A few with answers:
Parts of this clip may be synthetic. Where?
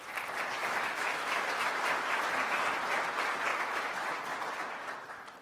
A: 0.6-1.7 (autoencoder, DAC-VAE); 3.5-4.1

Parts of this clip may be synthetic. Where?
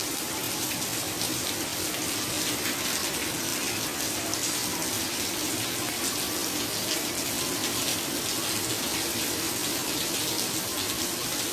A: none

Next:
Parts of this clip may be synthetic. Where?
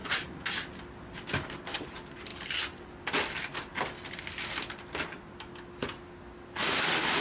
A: none